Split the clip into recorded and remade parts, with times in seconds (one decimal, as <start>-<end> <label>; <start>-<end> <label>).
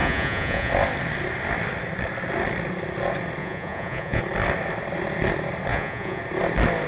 0.0-0.7 remade; 0.7-3.4 recorded; 3.4-4.2 remade; 4.2-5.7 recorded; 5.7-6.2 remade; 6.2-6.9 recorded